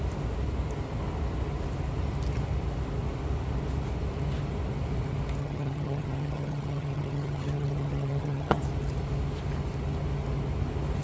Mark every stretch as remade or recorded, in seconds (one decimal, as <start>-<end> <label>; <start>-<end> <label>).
0.0-5.4 recorded; 5.4-8.6 remade; 8.6-11.0 recorded